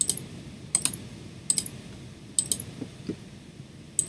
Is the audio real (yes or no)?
yes